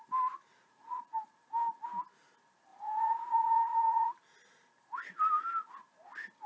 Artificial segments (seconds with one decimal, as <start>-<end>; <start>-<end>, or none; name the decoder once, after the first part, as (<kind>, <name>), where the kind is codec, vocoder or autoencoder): 0.5-1.0 (vocoder, Vocos); 2.7-4.1